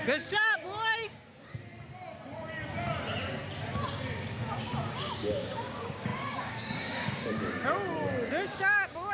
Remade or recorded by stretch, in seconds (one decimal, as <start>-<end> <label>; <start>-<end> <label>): 0.0-1.5 remade; 1.5-5.1 recorded; 5.1-9.1 remade